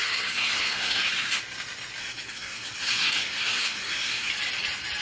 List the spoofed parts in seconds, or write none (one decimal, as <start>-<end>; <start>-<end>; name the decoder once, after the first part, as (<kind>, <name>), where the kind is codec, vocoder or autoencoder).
0.0-1.4 (codec, SNAC); 2.0-4.3